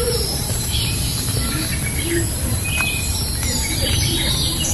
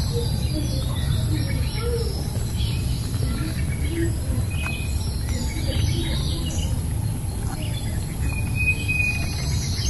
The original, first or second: second